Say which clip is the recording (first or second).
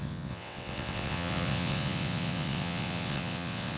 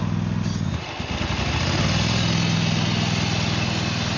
second